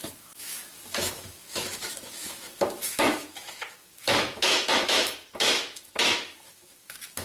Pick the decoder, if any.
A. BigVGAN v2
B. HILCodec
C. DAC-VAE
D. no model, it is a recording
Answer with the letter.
C